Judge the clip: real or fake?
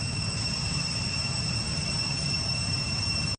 fake